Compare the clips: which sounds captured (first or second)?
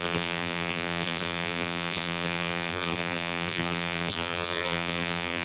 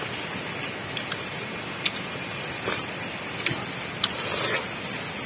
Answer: second